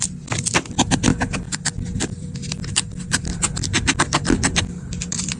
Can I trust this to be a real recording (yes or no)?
no